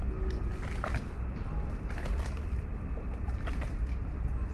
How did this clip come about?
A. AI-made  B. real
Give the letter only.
B